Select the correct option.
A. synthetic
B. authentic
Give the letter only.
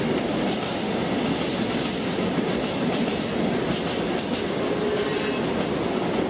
B